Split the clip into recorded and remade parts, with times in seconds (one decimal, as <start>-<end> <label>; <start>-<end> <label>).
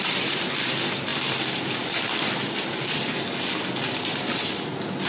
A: 0.0-5.1 recorded